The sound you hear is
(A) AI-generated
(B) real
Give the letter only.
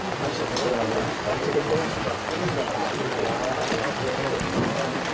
B